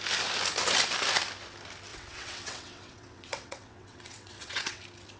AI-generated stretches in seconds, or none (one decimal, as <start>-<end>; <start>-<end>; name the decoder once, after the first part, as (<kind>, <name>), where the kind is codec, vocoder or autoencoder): 1.9-4.8 (vocoder, WaveNeXt)